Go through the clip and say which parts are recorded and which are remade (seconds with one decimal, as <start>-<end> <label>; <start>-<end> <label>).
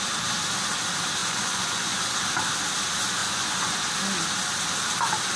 0.0-1.2 recorded; 1.2-2.0 remade; 2.0-3.2 recorded; 3.2-3.9 remade; 3.9-5.4 recorded